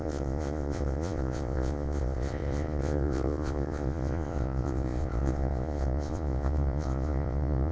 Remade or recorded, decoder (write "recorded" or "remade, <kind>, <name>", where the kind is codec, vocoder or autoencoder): remade, vocoder, Vocos